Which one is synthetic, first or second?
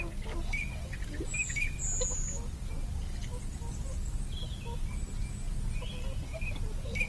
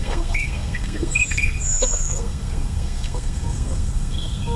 second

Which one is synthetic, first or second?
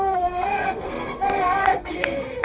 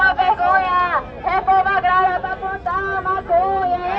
first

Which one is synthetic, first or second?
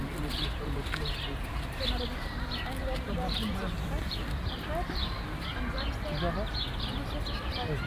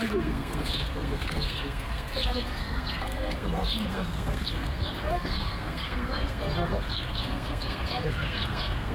second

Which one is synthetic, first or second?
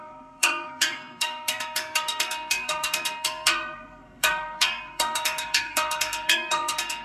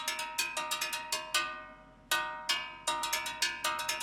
first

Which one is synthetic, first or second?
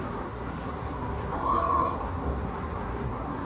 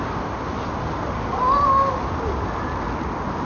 first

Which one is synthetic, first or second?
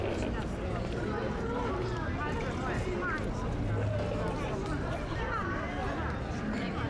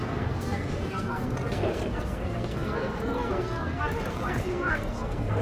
second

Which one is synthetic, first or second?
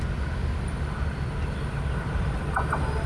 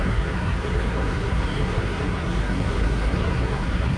second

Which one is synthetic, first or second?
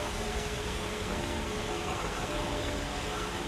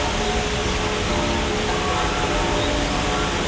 first